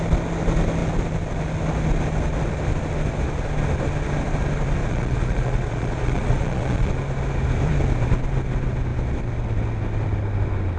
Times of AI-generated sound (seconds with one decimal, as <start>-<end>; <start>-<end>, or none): 4.8-6.9